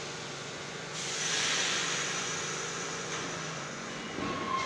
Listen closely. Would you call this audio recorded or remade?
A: remade